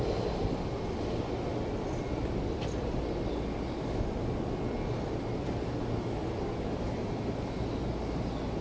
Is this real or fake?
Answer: real